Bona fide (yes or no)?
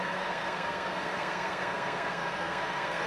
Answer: no